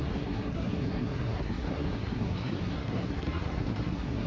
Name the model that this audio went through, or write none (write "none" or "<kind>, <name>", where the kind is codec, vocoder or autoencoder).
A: codec, SNAC